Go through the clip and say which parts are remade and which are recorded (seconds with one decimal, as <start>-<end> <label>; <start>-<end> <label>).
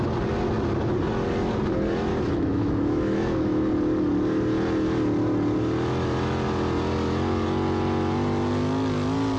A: 0.0-2.1 recorded; 2.1-3.7 remade; 3.7-9.4 recorded